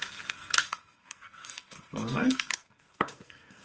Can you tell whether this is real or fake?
fake